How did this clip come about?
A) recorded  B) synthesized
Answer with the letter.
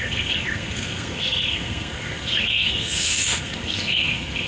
B